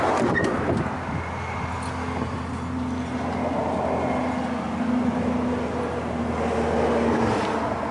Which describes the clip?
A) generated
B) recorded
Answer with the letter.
B